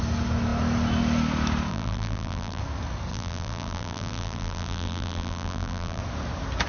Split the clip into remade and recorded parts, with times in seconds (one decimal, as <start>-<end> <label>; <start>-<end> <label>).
0.0-1.7 recorded; 1.7-2.6 remade; 2.6-3.1 recorded; 3.1-6.0 remade; 6.0-6.7 recorded